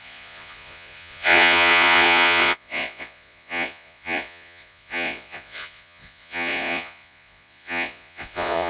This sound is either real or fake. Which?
fake